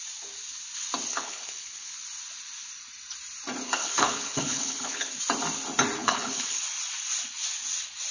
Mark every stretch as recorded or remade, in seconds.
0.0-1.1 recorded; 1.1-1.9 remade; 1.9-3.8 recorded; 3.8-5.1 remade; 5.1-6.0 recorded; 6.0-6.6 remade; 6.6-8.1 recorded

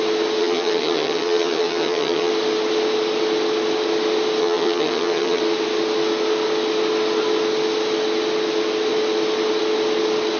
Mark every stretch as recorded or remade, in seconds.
0.0-0.4 recorded; 0.4-2.3 remade; 2.3-4.4 recorded; 4.4-5.4 remade; 5.4-10.4 recorded